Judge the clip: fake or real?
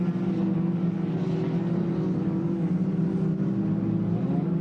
real